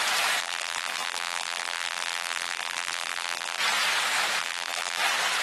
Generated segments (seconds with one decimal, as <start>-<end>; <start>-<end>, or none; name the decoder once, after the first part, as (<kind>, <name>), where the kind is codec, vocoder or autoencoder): 0.4-3.6 (vocoder, BigVGAN v2); 4.4-5.0

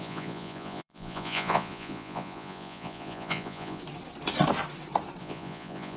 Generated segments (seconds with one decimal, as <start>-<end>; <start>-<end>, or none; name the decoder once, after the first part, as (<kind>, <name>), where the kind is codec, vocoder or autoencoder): 0.0-3.8 (vocoder, Vocos); 5.2-6.0

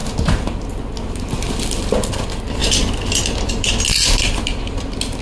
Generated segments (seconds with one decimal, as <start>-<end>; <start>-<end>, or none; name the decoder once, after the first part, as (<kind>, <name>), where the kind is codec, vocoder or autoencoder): none

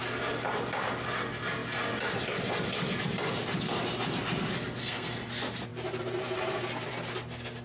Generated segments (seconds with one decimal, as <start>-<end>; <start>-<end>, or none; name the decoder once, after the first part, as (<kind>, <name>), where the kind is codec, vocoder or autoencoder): 4.8-5.3 (codec, SNAC)